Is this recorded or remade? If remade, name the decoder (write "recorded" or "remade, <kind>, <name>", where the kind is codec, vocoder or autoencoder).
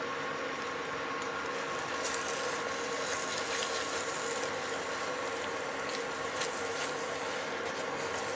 recorded